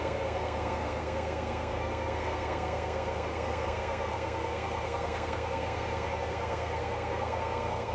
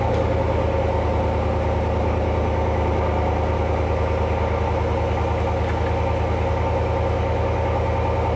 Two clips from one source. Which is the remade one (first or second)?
first